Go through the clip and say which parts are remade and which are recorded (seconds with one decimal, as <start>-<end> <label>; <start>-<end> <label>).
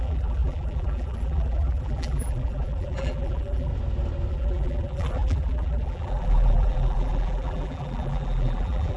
0.0-3.7 remade; 3.7-4.3 recorded; 4.3-9.0 remade